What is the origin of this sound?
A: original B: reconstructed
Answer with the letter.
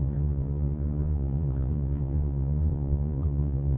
B